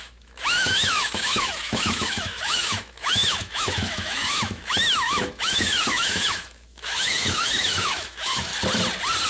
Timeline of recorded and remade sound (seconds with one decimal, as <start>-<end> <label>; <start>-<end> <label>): 0.0-8.5 remade; 8.5-9.3 recorded